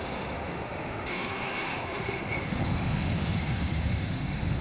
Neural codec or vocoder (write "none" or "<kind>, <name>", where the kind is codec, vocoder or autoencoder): autoencoder, DAC-VAE